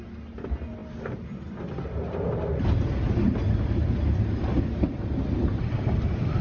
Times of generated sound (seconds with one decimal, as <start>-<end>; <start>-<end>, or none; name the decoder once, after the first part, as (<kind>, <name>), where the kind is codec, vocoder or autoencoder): none